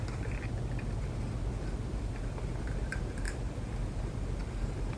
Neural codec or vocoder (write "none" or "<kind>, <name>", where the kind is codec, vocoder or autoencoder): none